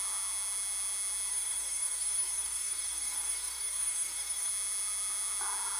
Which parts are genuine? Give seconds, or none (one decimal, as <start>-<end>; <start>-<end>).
0.0-1.3; 4.5-5.8